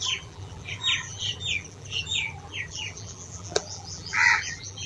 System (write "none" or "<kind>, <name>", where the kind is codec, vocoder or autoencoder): vocoder, BigVGAN v2